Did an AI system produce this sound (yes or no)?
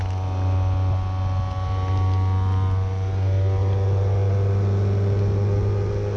no